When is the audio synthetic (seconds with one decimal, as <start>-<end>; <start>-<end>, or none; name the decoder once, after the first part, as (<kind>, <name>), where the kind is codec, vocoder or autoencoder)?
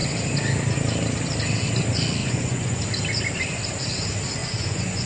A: 2.2-2.8 (vocoder, Vocos); 4.4-5.1